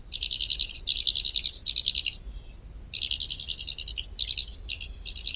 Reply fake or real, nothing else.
real